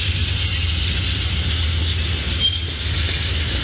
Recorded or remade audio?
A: recorded